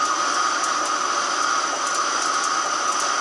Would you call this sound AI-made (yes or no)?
no